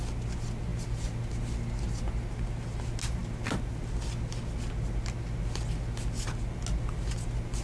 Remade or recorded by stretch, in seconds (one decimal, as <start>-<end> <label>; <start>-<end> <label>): 0.0-7.6 recorded